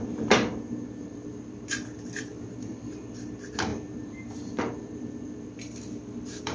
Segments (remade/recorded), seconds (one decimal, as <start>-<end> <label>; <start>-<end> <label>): 0.0-6.5 remade